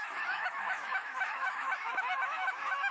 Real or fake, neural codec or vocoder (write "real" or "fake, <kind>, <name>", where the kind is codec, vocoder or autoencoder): fake, autoencoder, DAC-VAE